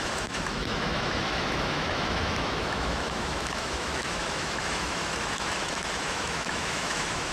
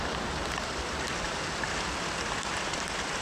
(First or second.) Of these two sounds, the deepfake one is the first